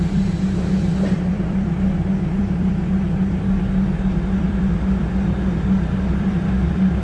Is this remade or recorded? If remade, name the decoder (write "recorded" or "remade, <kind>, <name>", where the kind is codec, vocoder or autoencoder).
remade, vocoder, BigVGAN v2